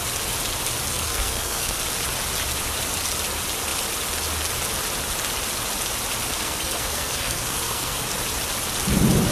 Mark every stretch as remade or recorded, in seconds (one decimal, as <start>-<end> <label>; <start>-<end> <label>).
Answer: 0.0-0.9 recorded; 0.9-1.8 remade; 1.8-6.3 recorded; 6.3-8.1 remade; 8.1-9.3 recorded